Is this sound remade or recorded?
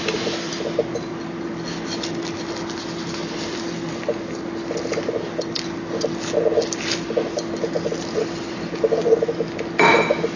recorded